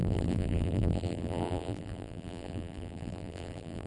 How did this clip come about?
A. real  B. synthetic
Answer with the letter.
B